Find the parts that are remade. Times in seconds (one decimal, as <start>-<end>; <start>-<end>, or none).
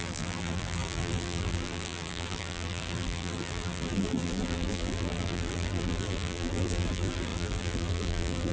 0.0-8.5